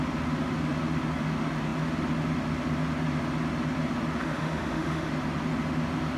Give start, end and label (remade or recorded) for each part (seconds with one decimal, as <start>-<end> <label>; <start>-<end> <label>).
0.0-4.2 recorded; 4.2-5.1 remade; 5.1-6.2 recorded